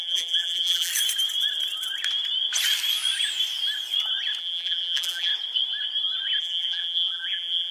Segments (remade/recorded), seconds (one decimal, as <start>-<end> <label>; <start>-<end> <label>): 0.0-0.9 remade; 0.9-4.4 recorded; 4.4-5.3 remade; 5.3-6.4 recorded; 6.4-7.7 remade